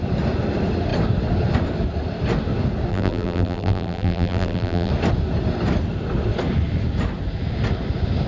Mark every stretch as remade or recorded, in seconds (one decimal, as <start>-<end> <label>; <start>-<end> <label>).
0.0-2.9 recorded; 2.9-4.9 remade; 4.9-8.3 recorded